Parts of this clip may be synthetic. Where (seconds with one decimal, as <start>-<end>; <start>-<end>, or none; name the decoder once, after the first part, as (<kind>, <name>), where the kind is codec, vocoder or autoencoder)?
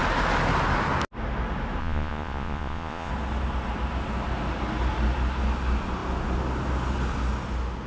1.8-3.1 (vocoder, Vocos)